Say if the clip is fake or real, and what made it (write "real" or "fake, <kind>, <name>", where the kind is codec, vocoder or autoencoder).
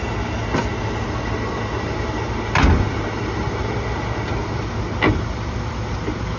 real